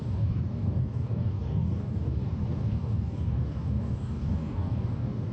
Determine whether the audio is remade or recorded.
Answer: remade